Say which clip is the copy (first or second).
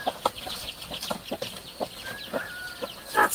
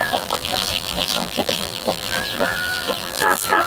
second